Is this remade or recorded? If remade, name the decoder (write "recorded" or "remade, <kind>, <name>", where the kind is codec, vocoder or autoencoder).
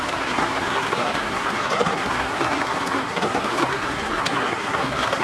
remade, codec, SNAC